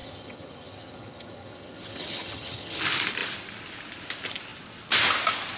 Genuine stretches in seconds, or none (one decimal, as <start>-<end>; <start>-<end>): 2.8-5.6